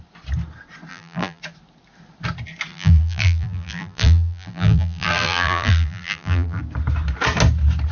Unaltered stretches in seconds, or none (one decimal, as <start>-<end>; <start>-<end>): 0.0-0.9; 1.4-2.7; 6.6-7.9